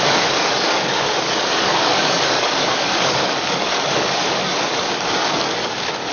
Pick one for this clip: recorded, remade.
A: remade